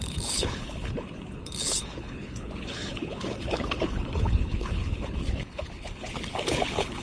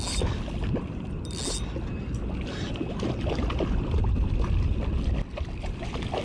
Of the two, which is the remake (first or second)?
first